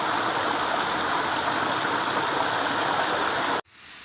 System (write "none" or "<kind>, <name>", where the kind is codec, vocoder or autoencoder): none